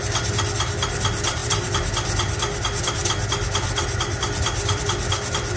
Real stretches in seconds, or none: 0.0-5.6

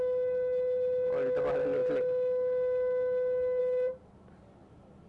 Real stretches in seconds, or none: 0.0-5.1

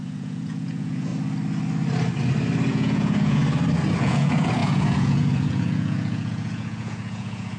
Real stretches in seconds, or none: 1.1-2.7; 3.4-4.0